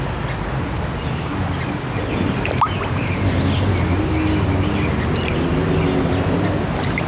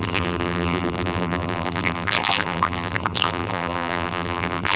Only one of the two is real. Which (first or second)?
first